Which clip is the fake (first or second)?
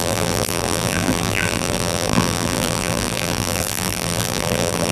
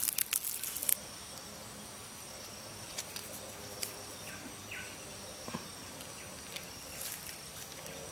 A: first